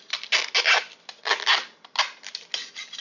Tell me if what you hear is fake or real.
real